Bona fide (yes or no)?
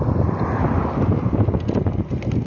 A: yes